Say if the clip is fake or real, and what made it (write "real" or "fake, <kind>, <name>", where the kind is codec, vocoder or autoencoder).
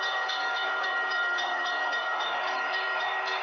fake, codec, DAC